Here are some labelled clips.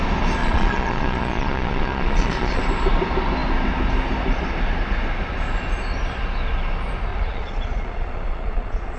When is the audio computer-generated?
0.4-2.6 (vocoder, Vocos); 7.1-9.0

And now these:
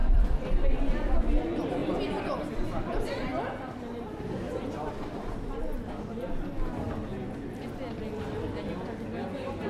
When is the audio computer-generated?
0.0-1.2 (vocoder, BigVGAN v2); 1.8-2.8

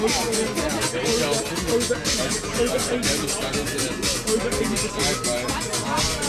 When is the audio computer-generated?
none